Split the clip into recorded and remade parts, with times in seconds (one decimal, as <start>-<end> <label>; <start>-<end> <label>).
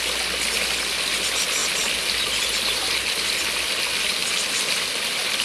0.0-5.4 recorded